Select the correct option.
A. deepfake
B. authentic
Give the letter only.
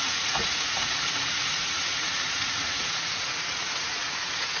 A